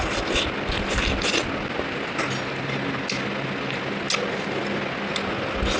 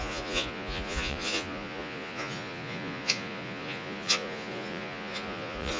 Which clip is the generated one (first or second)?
second